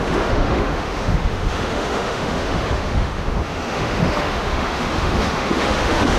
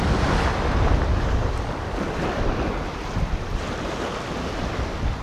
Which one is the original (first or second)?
second